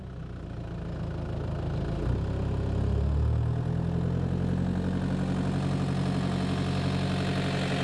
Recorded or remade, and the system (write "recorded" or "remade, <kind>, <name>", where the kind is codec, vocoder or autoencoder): recorded